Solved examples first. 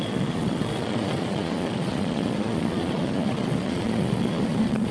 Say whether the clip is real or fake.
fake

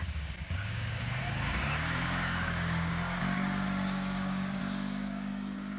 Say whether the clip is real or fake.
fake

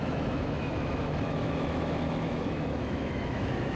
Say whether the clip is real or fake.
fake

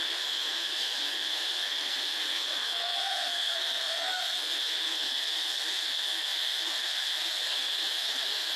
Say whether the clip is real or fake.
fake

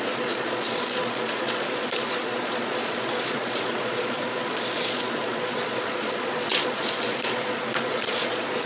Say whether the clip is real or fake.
fake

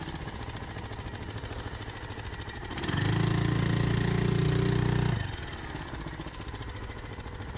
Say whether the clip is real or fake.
real